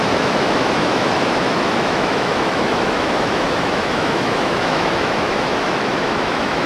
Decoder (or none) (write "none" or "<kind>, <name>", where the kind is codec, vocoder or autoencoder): autoencoder, DAC-VAE